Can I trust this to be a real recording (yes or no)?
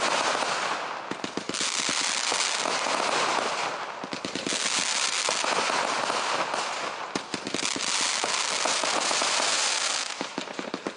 yes